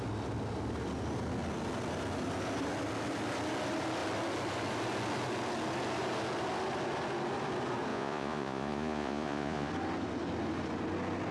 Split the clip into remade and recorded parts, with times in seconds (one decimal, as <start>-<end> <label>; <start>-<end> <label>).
0.0-7.9 recorded; 7.9-9.7 remade; 9.7-11.3 recorded